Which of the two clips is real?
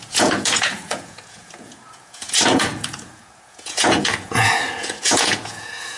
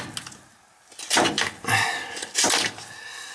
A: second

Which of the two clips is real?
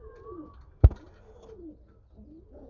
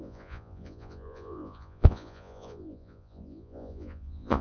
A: first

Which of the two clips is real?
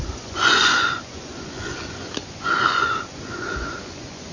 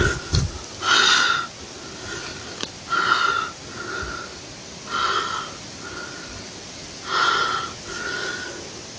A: second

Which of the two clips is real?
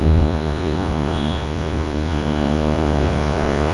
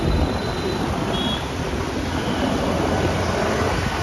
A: second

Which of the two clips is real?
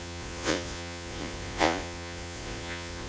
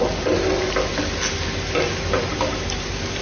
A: second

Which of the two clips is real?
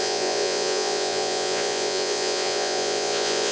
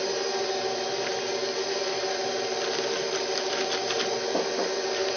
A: second